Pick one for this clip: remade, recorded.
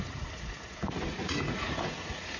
remade